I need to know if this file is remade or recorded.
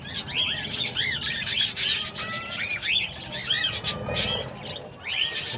recorded